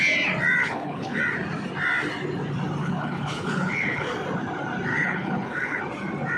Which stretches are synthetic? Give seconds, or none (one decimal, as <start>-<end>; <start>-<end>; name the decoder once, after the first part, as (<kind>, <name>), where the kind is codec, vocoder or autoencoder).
0.6-1.2 (codec, HILCodec); 2.8-4.1; 4.9-5.8